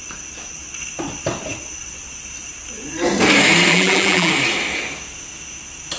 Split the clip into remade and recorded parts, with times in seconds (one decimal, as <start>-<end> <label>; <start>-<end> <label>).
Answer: 0.0-3.7 recorded; 3.7-4.3 remade; 4.3-6.0 recorded

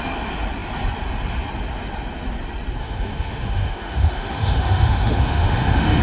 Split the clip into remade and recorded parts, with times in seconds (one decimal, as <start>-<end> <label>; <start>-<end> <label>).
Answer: 0.0-2.8 recorded; 2.8-6.0 remade

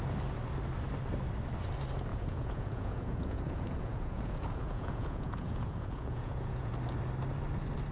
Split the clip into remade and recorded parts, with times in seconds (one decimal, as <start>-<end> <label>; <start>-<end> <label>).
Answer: 0.0-2.1 recorded; 2.1-6.7 remade; 6.7-7.9 recorded

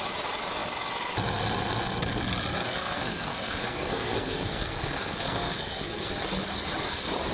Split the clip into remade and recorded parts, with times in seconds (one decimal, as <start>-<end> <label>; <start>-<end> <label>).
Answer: 0.0-2.6 recorded; 2.6-6.1 remade; 6.1-7.3 recorded

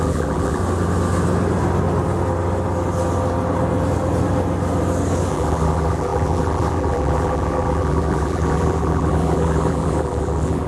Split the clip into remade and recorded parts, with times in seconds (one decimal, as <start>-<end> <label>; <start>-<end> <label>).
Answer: 0.0-0.6 remade; 0.6-5.3 recorded; 5.3-10.7 remade

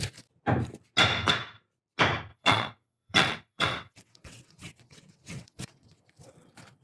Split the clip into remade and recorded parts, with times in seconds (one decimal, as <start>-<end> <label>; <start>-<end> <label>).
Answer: 0.0-2.3 recorded; 2.3-6.1 remade; 6.1-6.8 recorded

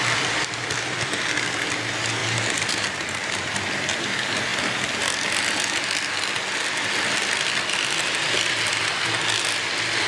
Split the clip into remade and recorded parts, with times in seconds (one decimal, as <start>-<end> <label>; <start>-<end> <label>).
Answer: 0.0-2.2 recorded; 2.2-3.6 remade; 3.6-10.1 recorded